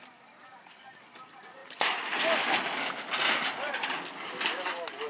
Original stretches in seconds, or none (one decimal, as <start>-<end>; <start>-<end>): 0.0-5.1